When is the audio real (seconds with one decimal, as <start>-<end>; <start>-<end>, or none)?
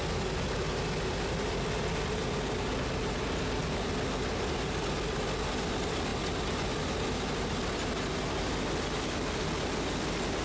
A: 0.0-10.4